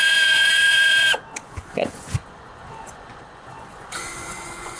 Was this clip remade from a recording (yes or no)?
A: yes